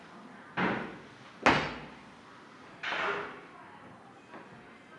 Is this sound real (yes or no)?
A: yes